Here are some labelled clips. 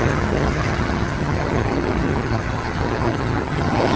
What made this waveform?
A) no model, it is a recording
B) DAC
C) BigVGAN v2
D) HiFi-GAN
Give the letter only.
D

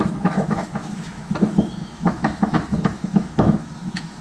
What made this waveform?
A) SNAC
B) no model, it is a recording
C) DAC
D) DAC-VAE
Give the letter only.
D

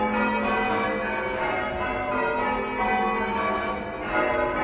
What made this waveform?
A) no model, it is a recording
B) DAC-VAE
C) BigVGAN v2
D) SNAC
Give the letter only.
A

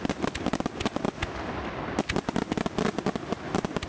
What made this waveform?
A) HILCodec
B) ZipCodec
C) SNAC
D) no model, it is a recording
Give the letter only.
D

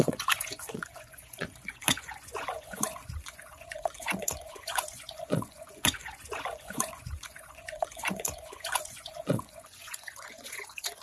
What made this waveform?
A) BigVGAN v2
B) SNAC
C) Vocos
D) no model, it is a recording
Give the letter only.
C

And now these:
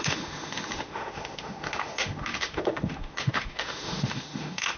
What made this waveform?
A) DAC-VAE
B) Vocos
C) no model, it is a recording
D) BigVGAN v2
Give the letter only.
A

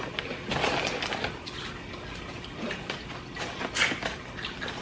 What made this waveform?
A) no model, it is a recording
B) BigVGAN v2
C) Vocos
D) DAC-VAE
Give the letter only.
A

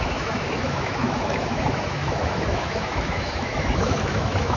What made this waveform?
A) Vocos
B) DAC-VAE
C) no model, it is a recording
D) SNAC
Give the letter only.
B